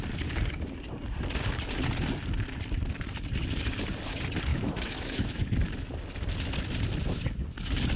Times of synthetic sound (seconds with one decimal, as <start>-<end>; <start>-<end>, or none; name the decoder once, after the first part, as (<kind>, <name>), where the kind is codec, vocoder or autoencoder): 4.5-5.4 (autoencoder, DAC-VAE)